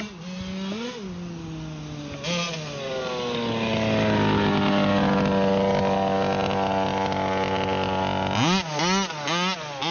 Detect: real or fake real